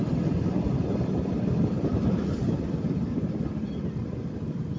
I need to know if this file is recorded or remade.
recorded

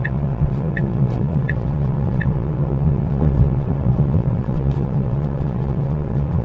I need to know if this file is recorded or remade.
remade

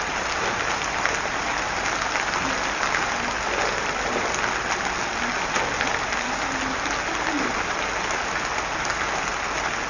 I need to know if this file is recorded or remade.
recorded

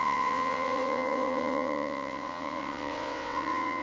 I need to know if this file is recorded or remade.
remade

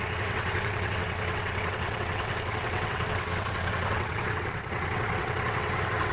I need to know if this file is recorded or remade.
remade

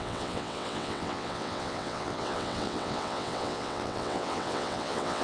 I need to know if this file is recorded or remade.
remade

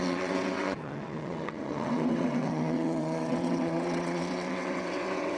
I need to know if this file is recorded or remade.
remade